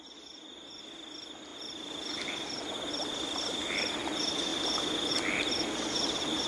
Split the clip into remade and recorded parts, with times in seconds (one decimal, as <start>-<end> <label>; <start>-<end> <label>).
0.0-6.5 recorded

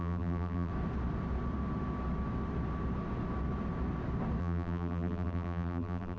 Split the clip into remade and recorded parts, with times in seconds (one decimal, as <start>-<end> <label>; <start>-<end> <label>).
0.0-0.7 remade; 0.7-4.4 recorded; 4.4-6.2 remade

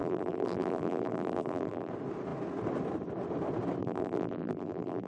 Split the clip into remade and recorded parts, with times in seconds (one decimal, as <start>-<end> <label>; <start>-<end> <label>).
0.0-1.9 remade; 1.9-3.8 recorded; 3.8-5.1 remade

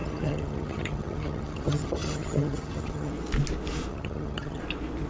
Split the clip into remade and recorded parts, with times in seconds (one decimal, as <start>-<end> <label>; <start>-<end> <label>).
0.0-3.1 remade; 3.1-3.9 recorded; 3.9-4.6 remade; 4.6-5.1 recorded

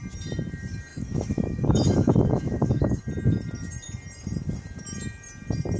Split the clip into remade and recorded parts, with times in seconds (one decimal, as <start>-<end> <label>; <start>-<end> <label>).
0.0-0.9 recorded; 0.9-3.0 remade; 3.0-5.8 recorded